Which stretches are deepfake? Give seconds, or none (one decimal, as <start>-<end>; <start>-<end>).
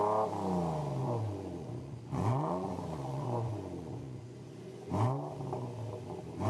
1.0-4.9